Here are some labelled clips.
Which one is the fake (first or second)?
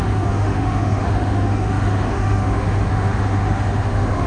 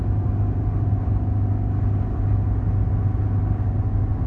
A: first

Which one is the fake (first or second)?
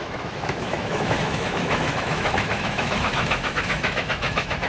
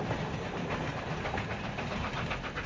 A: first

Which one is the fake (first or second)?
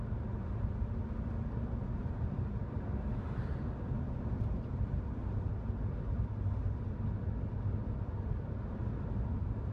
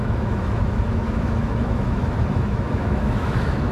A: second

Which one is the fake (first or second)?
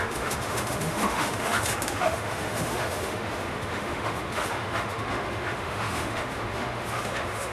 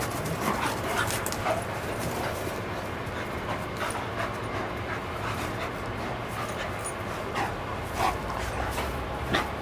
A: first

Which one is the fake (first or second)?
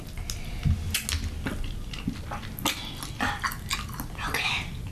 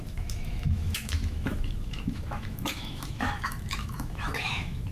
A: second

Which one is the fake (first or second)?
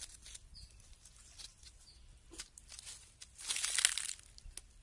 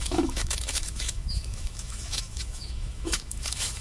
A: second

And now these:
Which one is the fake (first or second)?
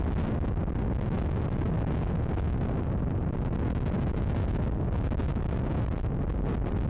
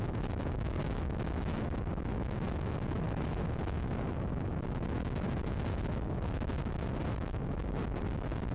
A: second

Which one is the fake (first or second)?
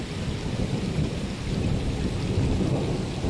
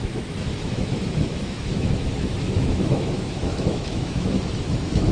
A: second